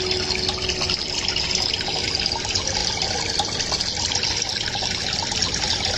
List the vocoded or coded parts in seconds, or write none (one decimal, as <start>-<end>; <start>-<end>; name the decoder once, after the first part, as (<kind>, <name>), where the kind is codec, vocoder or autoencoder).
none